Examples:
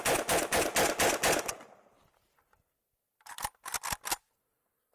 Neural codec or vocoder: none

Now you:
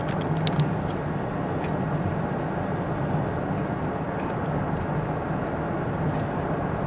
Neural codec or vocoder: none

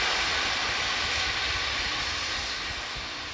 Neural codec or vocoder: none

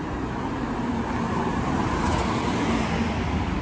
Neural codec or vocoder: none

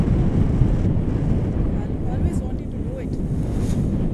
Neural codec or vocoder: none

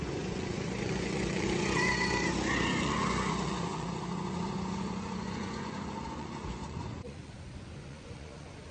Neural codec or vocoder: vocoder, Vocos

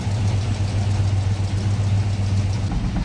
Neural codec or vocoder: none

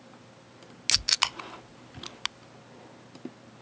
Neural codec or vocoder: none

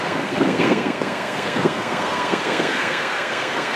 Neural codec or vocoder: codec, SNAC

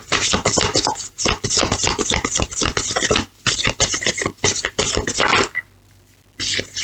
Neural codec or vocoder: none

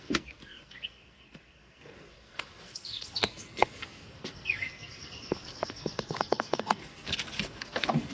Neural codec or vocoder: codec, SNAC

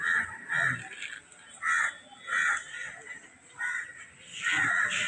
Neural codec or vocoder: none